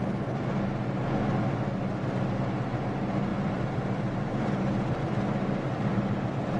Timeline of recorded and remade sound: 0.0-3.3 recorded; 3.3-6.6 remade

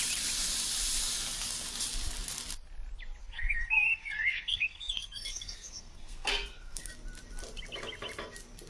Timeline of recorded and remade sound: 0.0-3.2 recorded; 3.2-6.9 remade; 6.9-8.7 recorded

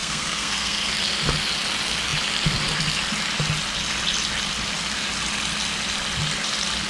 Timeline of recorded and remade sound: 0.0-0.9 remade; 0.9-6.9 recorded

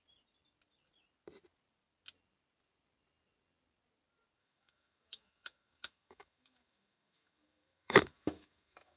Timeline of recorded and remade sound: 0.0-4.4 recorded; 4.4-9.0 remade